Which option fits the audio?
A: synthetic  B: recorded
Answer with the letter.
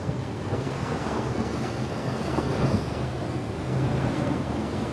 A